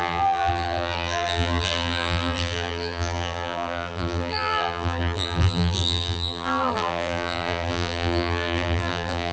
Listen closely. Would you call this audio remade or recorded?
remade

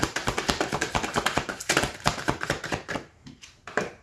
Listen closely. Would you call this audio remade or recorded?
remade